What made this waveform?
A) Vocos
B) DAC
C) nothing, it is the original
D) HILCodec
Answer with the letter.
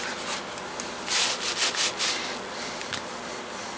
C